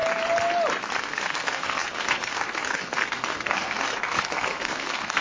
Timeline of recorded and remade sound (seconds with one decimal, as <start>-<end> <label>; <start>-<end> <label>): 0.0-1.0 recorded; 1.0-5.2 remade